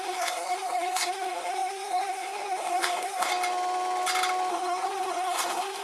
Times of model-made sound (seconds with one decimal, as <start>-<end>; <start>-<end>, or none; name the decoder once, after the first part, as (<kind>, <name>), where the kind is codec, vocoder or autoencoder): 0.0-3.3 (codec, SNAC); 4.5-5.8

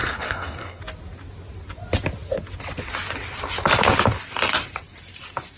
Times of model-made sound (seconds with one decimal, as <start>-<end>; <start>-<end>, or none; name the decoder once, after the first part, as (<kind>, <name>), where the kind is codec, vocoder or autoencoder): 0.0-0.8 (codec, SNAC)

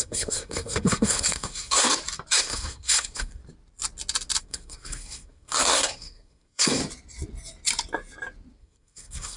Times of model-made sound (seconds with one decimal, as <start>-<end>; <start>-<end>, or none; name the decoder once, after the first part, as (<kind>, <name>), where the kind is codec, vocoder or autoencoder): 0.0-1.9 (codec, SNAC); 2.4-3.4; 4.4-6.8; 8.6-9.4

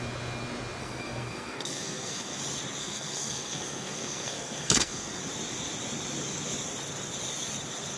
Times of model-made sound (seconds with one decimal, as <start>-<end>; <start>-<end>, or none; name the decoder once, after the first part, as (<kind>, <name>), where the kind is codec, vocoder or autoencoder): 0.8-2.4 (codec, SNAC); 2.8-5.2

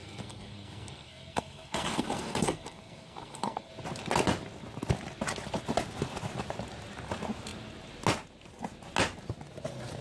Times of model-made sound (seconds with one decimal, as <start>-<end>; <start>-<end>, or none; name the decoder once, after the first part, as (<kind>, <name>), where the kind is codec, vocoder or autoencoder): 0.0-3.7 (codec, SNAC)

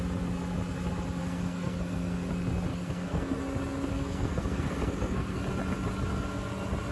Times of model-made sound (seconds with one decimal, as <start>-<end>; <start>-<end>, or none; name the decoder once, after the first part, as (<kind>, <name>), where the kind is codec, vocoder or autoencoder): 1.2-2.3 (codec, SNAC); 2.7-3.4; 3.9-5.4